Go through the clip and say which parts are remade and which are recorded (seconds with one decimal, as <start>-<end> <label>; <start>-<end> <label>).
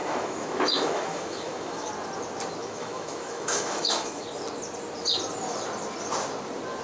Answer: 0.0-1.9 remade; 1.9-2.6 recorded; 2.6-4.2 remade; 4.2-6.8 recorded